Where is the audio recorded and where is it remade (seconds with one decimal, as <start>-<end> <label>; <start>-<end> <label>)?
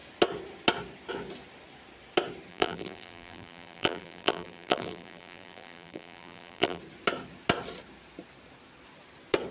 0.0-2.5 recorded; 2.5-6.8 remade; 6.8-9.5 recorded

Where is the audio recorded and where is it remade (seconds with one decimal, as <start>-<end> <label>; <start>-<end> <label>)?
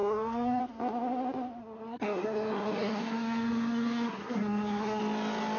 0.0-0.6 remade; 0.6-1.6 recorded; 1.6-5.0 remade; 5.0-5.6 recorded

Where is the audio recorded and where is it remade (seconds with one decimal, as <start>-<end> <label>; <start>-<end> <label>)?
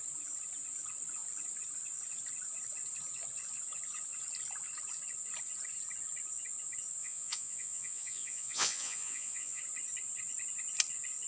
0.0-7.0 recorded; 7.0-9.6 remade; 9.6-11.3 recorded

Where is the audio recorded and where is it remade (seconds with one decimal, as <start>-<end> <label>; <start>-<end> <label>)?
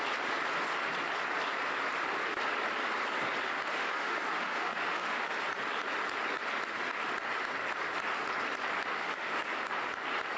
0.0-3.7 recorded; 3.7-5.3 remade; 5.3-8.9 recorded; 8.9-9.5 remade; 9.5-10.4 recorded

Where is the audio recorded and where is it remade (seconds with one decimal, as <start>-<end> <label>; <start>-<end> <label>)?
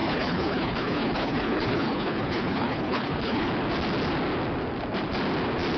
0.0-3.5 remade; 3.5-5.8 recorded